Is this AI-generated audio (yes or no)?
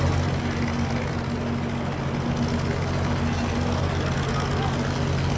no